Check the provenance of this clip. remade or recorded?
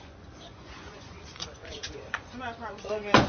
remade